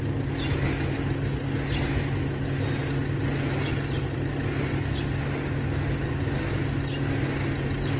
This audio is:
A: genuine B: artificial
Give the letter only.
A